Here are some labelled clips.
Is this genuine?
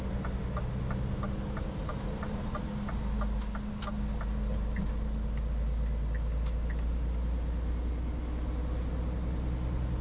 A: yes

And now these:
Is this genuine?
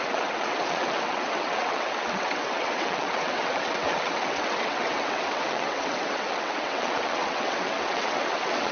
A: no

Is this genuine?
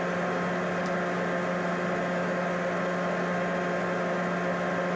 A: yes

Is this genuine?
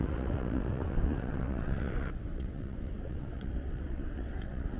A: no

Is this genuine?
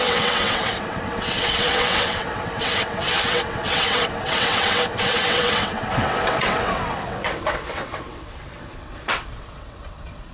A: no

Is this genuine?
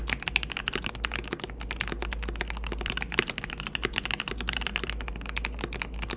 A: yes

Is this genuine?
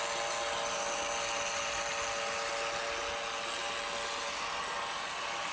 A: yes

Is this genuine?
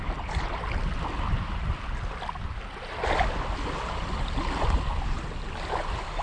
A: yes